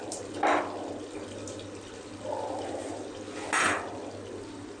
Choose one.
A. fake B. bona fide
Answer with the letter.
B